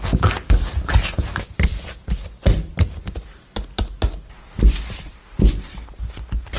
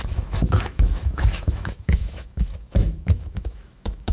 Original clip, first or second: first